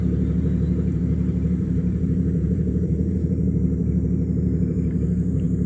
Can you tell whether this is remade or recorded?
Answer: remade